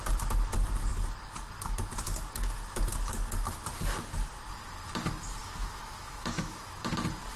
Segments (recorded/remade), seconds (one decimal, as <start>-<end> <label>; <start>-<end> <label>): 0.0-5.4 recorded; 5.4-6.6 remade; 6.6-7.4 recorded